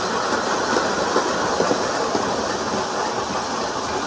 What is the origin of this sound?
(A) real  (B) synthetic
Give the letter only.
A